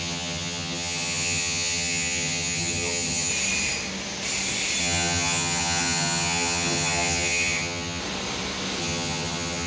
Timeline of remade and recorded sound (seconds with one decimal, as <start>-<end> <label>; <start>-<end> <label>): 0.0-3.3 remade; 3.3-4.8 recorded; 4.8-8.0 remade; 8.0-8.8 recorded; 8.8-9.7 remade